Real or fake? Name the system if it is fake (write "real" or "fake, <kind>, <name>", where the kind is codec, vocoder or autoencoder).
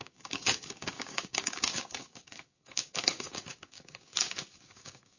fake, codec, DAC